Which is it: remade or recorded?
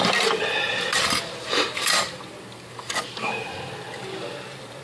recorded